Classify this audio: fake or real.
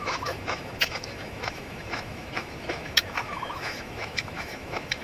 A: fake